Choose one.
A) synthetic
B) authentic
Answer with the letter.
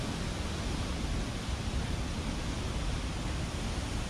B